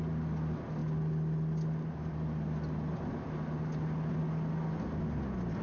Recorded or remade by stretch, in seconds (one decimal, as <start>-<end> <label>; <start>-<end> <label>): 0.0-5.6 recorded